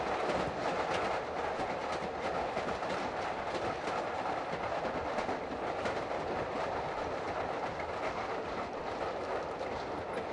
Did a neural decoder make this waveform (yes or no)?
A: no